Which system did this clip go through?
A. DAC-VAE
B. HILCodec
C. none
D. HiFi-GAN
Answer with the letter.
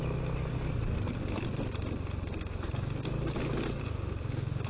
C